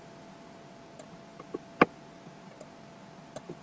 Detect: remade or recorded recorded